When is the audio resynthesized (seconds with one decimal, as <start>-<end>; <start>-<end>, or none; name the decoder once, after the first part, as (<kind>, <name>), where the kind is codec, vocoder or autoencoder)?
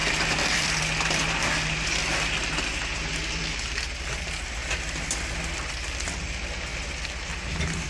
0.0-0.8 (vocoder, BigVGAN v2)